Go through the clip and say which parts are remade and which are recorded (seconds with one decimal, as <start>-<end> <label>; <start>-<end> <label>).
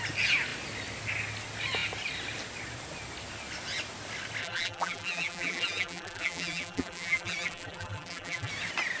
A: 0.0-4.4 recorded; 4.4-8.5 remade; 8.5-9.0 recorded